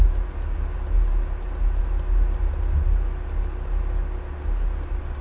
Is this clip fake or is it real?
real